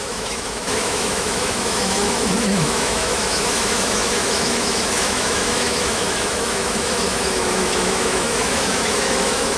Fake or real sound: fake